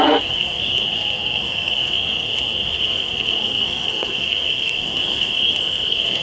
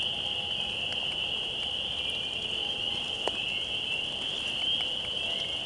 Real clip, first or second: second